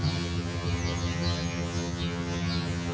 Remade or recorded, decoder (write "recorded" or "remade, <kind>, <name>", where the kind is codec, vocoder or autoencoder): remade, vocoder, HiFi-GAN